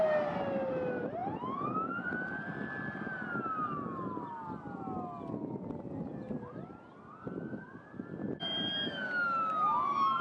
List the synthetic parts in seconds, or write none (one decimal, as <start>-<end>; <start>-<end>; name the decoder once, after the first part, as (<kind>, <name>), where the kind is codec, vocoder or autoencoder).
none